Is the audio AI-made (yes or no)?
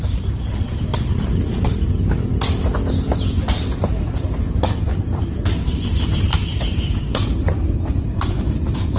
no